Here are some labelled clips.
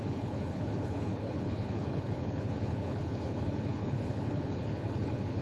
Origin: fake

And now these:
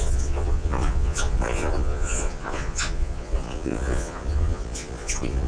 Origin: fake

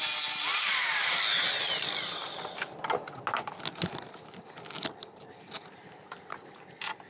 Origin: real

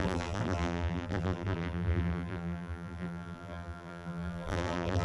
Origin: fake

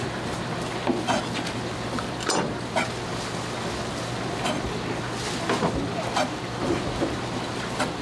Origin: real